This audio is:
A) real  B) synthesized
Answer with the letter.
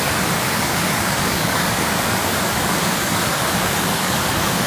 B